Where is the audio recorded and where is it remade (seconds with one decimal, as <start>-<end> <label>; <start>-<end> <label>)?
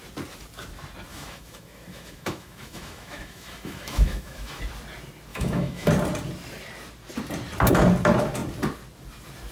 0.0-1.1 recorded; 1.1-4.6 remade; 4.6-5.3 recorded; 5.3-5.9 remade; 5.9-9.5 recorded